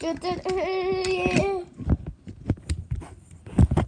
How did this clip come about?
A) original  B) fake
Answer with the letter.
A